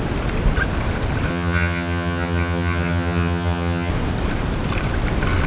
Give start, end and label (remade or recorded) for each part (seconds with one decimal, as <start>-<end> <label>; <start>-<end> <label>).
0.0-1.3 recorded; 1.3-3.9 remade; 3.9-5.5 recorded